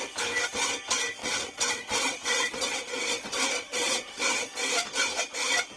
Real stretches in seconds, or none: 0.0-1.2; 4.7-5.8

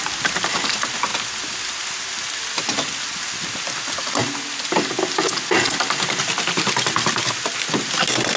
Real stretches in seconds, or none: 0.0-8.4

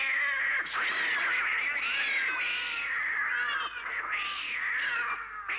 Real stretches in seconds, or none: 0.0-5.6

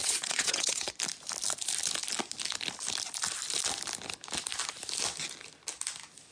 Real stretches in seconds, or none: 0.9-6.3

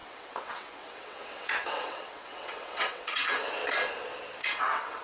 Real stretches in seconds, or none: 3.6-4.4

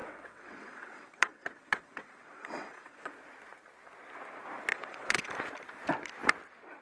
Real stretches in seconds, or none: 3.1-4.7; 5.3-6.8

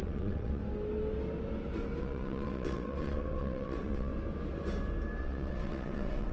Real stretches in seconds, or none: 0.6-2.0; 4.1-5.2

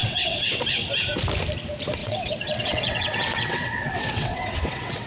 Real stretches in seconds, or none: 0.6-2.0